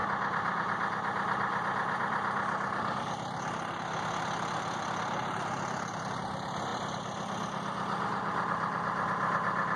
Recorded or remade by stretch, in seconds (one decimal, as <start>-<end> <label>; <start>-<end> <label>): 0.0-9.8 recorded